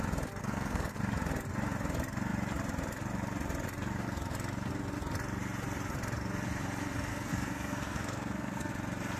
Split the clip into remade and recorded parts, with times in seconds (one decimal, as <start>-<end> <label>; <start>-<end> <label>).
0.0-0.4 recorded; 0.4-0.9 remade; 0.9-7.1 recorded; 7.1-8.7 remade; 8.7-9.2 recorded